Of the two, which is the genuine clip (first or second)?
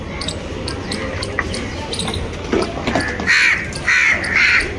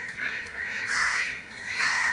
first